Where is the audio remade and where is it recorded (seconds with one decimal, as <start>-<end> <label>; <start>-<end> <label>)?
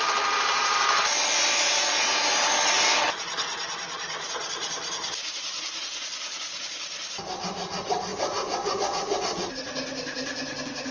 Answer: 0.0-10.9 recorded